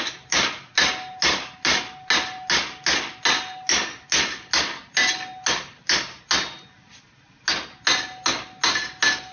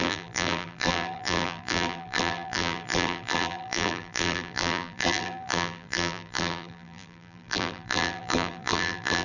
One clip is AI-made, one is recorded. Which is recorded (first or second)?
first